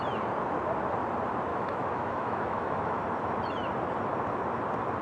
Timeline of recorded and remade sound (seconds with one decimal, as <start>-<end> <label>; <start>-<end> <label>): 0.0-1.5 recorded; 1.5-3.0 remade; 3.0-5.0 recorded